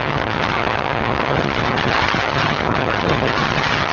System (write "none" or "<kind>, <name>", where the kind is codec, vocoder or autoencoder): vocoder, HiFi-GAN